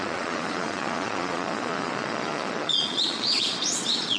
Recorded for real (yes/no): no